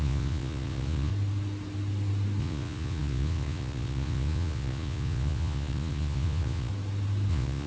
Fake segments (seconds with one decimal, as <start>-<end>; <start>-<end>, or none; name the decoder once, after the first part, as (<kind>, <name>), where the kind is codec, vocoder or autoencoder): 0.0-1.1 (vocoder, Vocos); 2.4-6.7; 7.3-7.7